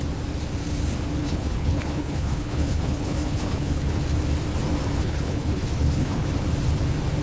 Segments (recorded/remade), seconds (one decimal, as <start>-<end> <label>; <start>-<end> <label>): 0.0-1.2 recorded; 1.2-4.0 remade; 4.0-5.0 recorded; 5.0-6.3 remade; 6.3-7.2 recorded